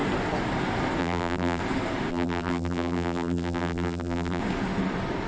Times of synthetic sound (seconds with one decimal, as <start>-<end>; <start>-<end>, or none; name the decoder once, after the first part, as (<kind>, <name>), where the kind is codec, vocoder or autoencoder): 1.0-1.6 (vocoder, BigVGAN v2); 2.1-4.4